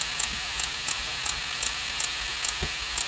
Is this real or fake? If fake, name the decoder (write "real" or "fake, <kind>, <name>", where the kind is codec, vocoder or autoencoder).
real